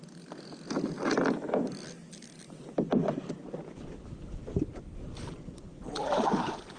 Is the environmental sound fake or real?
real